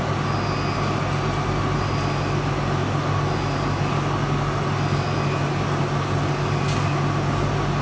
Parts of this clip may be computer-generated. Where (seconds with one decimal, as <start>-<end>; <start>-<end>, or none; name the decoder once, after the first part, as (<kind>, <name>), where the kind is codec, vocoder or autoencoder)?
none